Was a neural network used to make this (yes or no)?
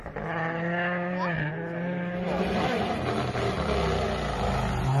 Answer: no